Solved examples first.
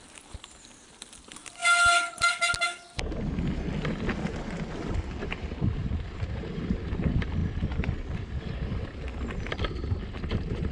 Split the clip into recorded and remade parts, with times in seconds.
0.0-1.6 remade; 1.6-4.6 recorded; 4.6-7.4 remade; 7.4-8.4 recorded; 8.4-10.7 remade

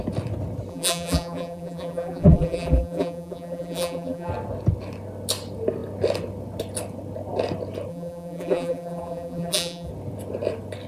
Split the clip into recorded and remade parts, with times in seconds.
0.0-0.7 recorded; 0.7-4.3 remade; 4.3-7.9 recorded; 7.9-9.9 remade; 9.9-10.9 recorded

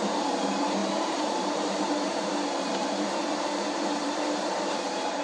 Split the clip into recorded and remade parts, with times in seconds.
0.0-5.2 remade

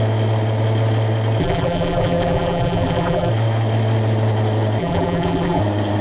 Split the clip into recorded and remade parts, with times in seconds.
0.0-1.4 recorded; 1.4-3.3 remade; 3.3-4.8 recorded; 4.8-5.6 remade; 5.6-6.0 recorded